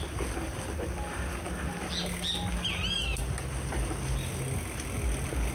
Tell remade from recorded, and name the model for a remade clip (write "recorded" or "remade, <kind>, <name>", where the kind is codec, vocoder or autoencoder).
recorded